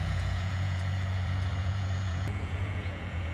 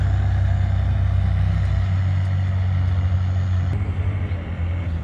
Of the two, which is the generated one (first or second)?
first